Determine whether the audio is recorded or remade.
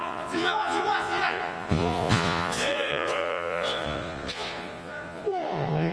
remade